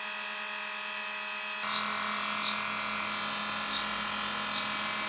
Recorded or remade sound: recorded